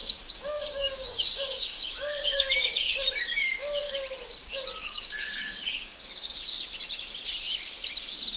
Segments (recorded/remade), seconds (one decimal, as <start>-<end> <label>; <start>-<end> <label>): 0.0-4.0 remade; 4.0-4.4 recorded; 4.4-6.5 remade; 6.5-8.4 recorded